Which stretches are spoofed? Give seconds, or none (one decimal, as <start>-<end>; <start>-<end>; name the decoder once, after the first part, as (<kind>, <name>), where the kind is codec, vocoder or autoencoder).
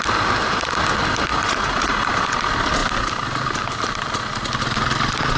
1.3-2.1 (vocoder, Vocos)